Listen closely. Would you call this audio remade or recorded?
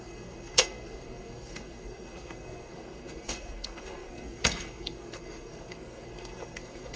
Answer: remade